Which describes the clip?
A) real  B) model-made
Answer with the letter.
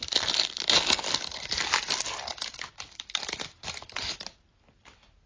A